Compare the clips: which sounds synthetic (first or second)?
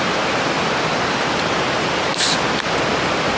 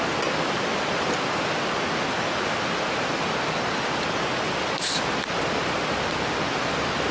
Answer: first